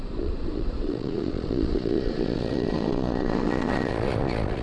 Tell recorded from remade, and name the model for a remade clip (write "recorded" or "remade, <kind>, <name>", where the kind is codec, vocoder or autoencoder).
remade, vocoder, Vocos